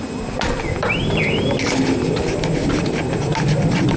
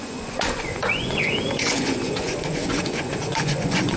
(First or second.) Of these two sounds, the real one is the first